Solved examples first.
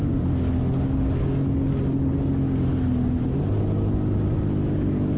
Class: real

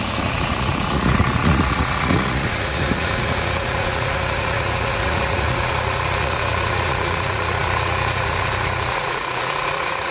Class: fake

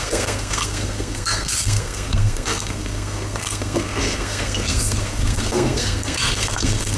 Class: fake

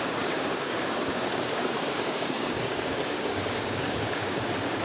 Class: fake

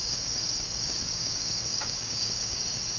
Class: fake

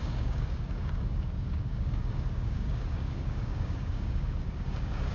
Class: fake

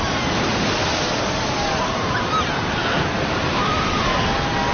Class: real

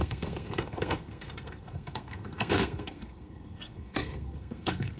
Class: fake